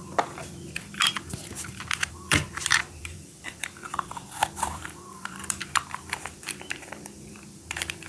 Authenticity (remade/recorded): remade